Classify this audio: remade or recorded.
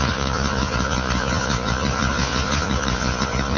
remade